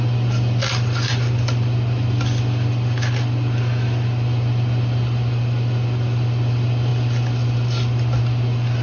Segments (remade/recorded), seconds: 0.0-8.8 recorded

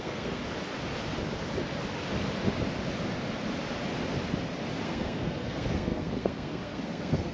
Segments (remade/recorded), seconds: 0.0-0.4 remade; 0.4-4.8 recorded; 4.8-7.3 remade

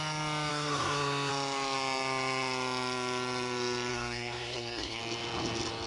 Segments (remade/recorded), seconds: 0.0-0.5 recorded; 0.5-1.3 remade; 1.3-3.9 recorded; 3.9-5.0 remade; 5.0-5.9 recorded